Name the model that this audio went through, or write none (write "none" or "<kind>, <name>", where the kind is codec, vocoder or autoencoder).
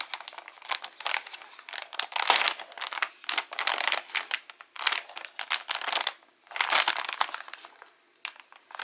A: none